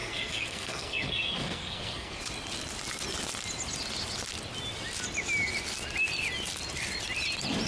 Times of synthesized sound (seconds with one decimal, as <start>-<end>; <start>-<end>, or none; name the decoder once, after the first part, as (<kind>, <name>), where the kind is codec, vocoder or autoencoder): 0.0-2.2 (codec, SNAC)